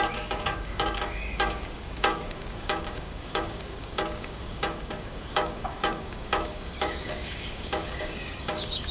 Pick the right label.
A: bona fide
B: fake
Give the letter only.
B